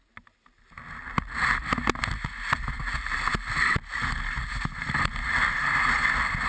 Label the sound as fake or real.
real